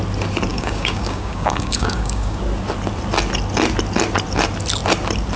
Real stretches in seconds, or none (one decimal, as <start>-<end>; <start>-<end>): 0.0-0.5; 2.4-5.4